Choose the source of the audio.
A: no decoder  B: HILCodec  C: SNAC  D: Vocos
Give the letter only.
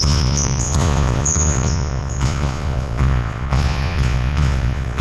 D